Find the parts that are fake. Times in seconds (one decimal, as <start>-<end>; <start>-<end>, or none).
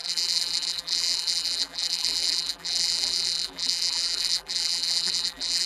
0.0-5.7